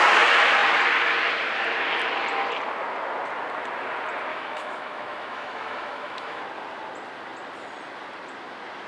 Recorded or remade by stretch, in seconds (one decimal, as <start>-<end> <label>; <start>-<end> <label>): 0.0-4.3 recorded; 4.3-6.4 remade; 6.4-8.9 recorded